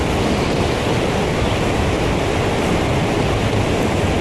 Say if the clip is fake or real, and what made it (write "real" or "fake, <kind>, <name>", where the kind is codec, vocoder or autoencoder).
real